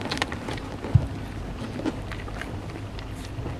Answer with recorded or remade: recorded